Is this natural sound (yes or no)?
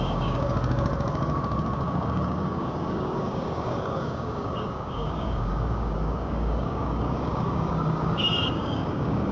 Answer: no